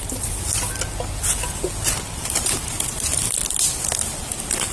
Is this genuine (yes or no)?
yes